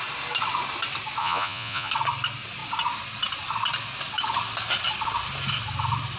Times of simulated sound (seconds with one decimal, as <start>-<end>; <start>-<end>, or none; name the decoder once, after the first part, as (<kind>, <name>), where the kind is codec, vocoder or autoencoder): 1.2-1.9 (vocoder, Vocos)